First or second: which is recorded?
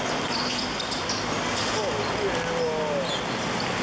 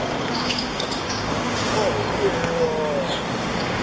first